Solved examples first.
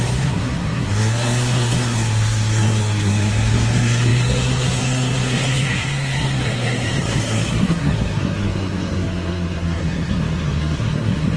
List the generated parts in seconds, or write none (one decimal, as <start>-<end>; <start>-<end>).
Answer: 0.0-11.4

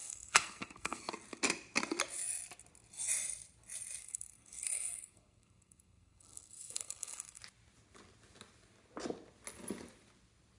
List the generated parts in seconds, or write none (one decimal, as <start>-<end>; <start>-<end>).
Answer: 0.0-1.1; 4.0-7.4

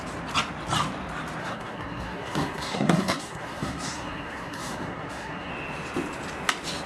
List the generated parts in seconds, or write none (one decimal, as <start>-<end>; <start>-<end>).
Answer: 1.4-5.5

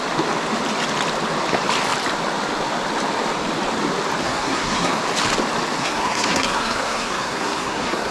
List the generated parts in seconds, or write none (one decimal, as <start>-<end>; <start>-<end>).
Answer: 4.2-5.0; 5.8-8.1

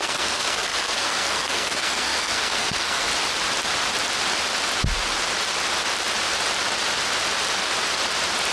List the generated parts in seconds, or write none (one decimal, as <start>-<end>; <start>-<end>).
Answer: 0.0-3.1

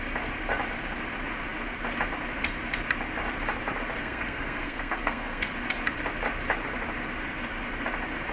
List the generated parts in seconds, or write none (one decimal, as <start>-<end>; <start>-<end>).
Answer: 4.0-5.5

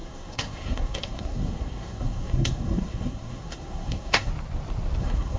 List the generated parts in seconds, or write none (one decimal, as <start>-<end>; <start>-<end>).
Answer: 0.0-4.3; 5.0-5.4